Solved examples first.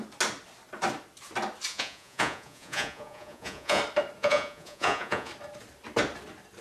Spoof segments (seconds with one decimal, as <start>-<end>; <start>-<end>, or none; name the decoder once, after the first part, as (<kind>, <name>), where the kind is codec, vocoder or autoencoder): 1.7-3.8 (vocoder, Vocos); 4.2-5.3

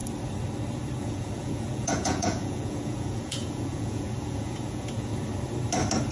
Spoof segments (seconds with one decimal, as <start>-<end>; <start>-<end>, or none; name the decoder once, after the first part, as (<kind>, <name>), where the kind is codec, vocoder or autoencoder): 1.0-5.1 (vocoder, Vocos)

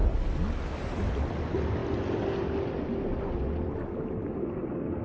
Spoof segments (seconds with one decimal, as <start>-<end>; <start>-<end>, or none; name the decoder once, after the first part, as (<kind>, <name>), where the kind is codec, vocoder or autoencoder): none